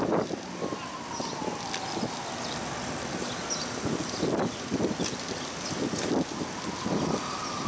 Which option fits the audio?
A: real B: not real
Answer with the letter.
A